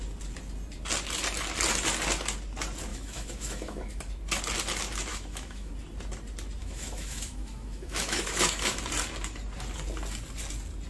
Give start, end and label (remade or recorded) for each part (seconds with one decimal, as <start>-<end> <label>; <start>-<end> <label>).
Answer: 0.0-2.9 recorded; 2.9-4.0 remade; 4.0-5.1 recorded; 5.1-5.7 remade; 5.7-6.6 recorded; 6.6-8.8 remade; 8.8-10.9 recorded